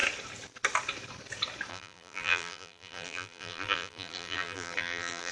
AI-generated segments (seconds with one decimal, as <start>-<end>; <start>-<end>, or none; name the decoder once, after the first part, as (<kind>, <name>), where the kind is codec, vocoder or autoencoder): 1.7-5.3 (vocoder, BigVGAN v2)